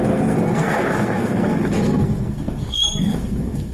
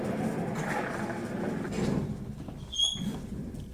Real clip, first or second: second